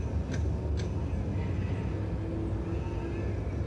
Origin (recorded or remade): recorded